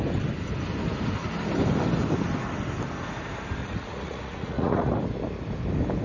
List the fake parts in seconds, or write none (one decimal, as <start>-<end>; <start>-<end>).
3.6-4.9